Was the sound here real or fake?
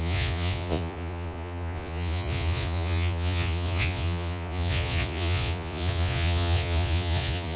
fake